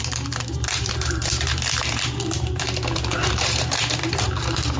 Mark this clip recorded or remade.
remade